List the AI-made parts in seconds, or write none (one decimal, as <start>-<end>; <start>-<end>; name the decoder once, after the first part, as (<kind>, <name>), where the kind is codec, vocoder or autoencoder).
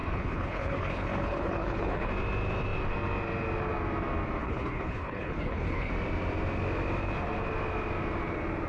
0.0-2.1 (codec, HILCodec); 4.4-5.9